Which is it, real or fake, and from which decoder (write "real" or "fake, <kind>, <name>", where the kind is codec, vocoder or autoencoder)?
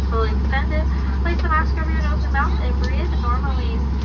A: real